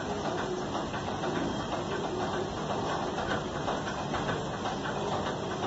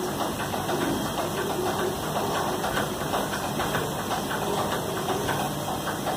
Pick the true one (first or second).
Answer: first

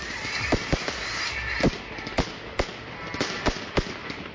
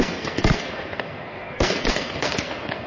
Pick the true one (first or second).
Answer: first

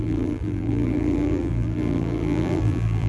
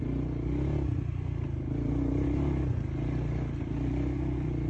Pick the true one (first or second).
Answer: second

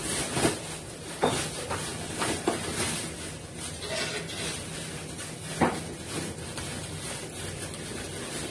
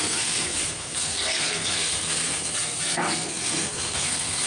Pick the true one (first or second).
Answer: first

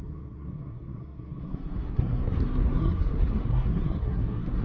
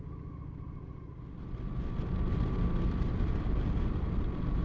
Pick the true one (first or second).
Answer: second